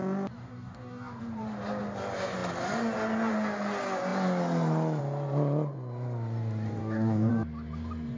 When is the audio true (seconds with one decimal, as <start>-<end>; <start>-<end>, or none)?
0.0-0.4; 1.2-6.8; 7.3-8.2